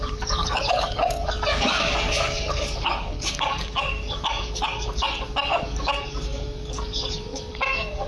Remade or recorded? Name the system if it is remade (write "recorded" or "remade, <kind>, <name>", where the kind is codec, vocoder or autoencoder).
remade, codec, DAC